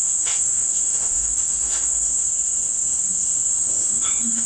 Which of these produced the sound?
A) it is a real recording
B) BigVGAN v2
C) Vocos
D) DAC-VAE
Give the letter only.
D